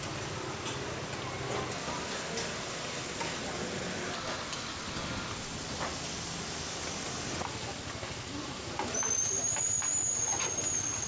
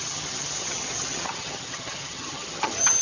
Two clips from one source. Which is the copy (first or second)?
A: second